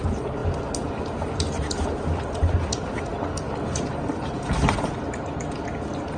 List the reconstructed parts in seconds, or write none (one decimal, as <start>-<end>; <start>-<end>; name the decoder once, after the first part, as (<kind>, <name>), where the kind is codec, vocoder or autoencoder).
none

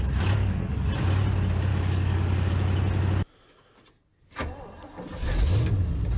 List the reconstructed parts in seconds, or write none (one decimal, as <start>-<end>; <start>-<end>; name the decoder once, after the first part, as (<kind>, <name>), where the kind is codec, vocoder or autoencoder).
0.4-0.9 (codec, DAC); 1.7-2.5